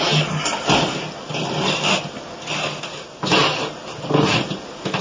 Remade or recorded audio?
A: recorded